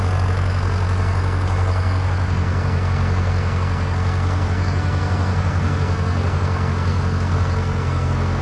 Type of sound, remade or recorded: remade